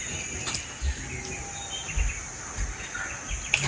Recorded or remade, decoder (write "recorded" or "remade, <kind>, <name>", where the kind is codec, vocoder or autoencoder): recorded